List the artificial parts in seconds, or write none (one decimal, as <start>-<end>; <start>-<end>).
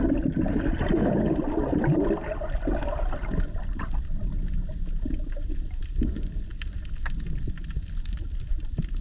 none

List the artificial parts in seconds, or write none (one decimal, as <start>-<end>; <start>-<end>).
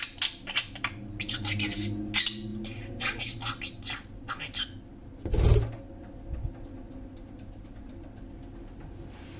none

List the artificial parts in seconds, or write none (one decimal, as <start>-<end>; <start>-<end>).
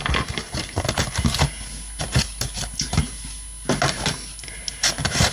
none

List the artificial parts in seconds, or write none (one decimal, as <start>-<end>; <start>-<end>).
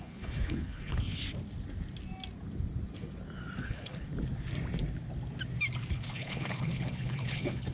0.0-1.2; 3.6-4.1; 5.9-7.7